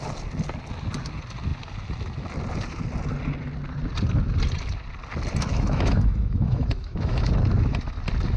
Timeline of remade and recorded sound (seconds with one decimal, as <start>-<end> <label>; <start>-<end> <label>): 0.0-5.5 recorded; 5.5-7.3 remade; 7.3-8.4 recorded